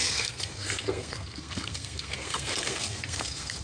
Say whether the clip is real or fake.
fake